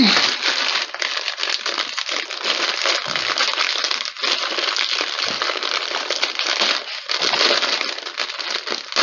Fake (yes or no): no